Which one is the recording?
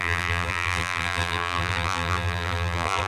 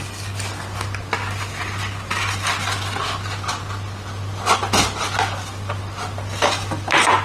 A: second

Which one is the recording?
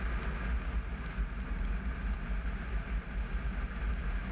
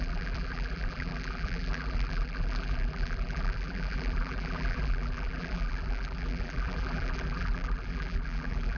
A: first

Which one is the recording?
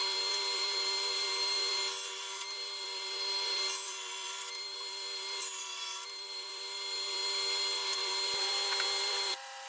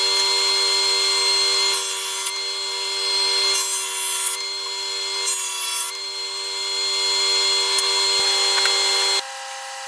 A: second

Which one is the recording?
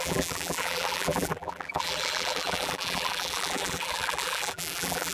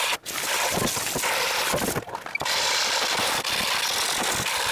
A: second